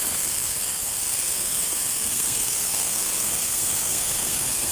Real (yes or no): no